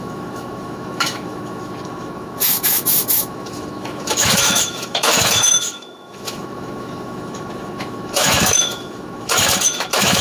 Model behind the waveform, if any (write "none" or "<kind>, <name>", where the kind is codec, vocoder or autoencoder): autoencoder, DAC-VAE